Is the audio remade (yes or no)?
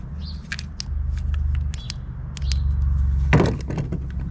no